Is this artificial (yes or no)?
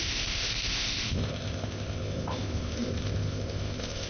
yes